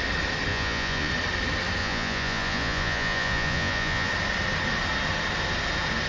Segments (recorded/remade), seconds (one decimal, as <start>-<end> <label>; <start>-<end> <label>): 0.0-0.5 recorded; 0.5-1.1 remade; 1.1-1.8 recorded; 1.8-4.1 remade; 4.1-6.1 recorded